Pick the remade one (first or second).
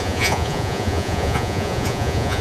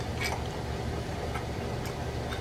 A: first